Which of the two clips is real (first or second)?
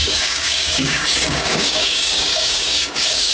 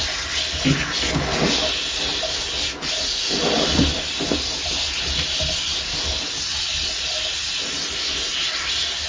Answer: second